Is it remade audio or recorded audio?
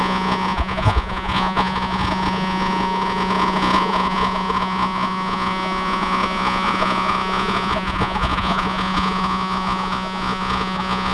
remade